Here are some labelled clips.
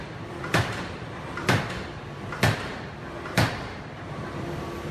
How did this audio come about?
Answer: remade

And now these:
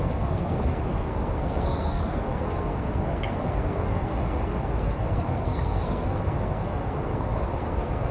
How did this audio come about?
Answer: remade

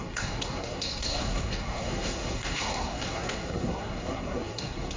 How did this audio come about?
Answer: remade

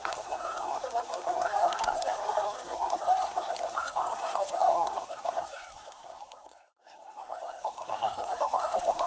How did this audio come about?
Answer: remade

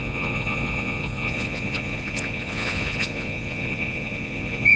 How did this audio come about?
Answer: remade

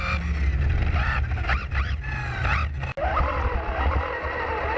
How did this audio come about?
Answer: recorded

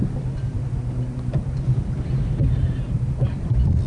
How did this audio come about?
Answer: recorded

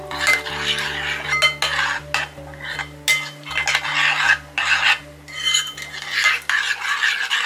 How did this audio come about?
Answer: recorded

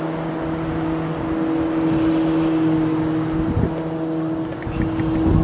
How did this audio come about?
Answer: recorded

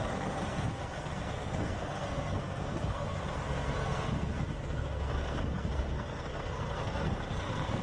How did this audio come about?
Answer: remade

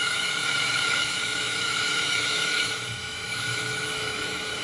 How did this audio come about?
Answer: remade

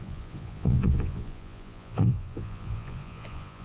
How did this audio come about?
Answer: remade